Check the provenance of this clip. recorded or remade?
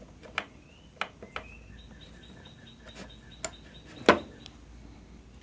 recorded